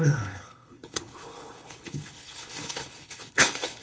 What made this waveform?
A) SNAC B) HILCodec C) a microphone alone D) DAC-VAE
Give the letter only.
B